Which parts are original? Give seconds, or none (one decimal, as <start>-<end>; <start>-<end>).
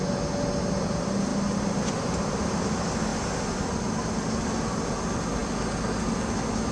0.0-6.7